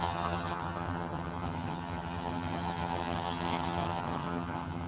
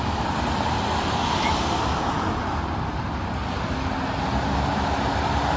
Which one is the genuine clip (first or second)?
second